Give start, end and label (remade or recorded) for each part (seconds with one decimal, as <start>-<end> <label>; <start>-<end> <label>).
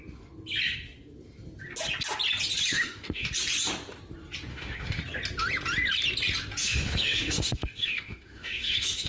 0.0-2.7 recorded; 2.7-3.3 remade; 3.3-4.5 recorded; 4.5-5.0 remade; 5.0-6.6 recorded; 6.6-9.1 remade